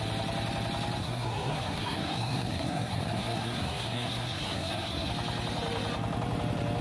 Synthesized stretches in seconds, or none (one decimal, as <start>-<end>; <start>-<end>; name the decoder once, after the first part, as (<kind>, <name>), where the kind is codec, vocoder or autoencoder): 1.0-5.1 (codec, SNAC)